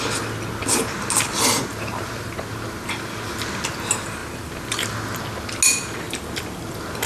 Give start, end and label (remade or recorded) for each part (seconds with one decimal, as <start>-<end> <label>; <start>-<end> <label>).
0.0-1.7 recorded; 1.7-2.3 remade; 2.3-7.1 recorded